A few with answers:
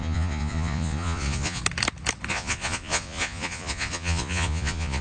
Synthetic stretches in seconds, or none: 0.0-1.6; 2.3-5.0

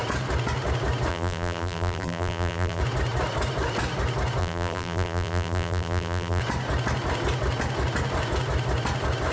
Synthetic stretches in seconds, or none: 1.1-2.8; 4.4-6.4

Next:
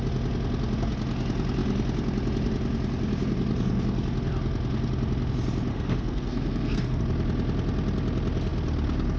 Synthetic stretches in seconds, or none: 5.7-7.0

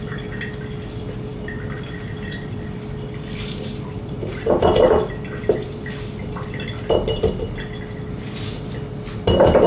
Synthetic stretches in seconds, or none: none